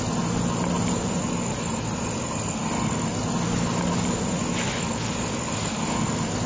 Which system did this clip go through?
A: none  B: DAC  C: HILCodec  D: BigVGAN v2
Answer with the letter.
A